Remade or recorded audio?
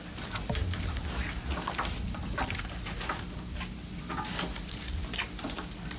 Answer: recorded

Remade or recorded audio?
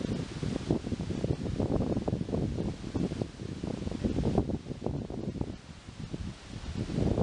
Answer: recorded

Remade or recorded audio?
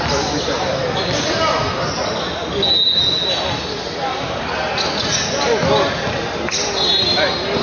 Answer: recorded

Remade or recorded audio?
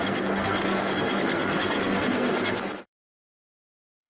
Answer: remade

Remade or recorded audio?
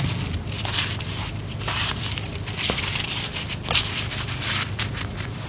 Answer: remade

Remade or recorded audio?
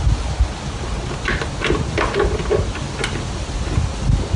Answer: recorded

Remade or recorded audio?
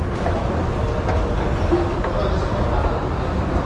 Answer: recorded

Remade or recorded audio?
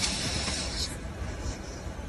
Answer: remade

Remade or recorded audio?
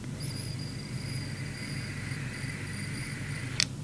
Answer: recorded